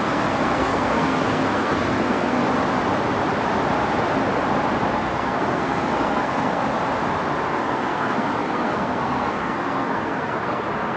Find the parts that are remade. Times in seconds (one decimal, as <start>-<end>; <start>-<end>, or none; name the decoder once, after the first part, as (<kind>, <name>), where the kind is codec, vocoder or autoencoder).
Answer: 0.0-2.4 (codec, SNAC); 4.9-6.6; 7.5-11.0